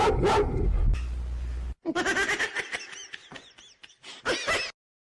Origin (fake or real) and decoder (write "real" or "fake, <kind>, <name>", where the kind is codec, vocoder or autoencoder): real